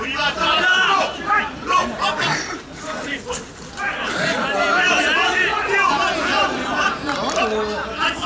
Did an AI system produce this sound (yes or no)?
no